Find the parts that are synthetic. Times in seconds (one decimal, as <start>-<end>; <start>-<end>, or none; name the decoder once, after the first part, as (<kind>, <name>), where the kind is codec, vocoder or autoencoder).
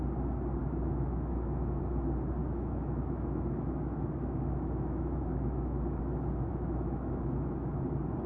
0.6-1.8 (autoencoder, DAC-VAE); 2.4-6.0; 6.5-7.5